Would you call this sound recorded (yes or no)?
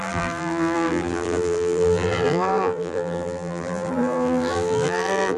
no